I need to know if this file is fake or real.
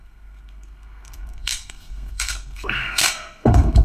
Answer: fake